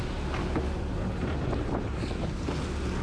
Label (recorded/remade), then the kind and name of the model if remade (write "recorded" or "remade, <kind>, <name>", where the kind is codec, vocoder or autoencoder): recorded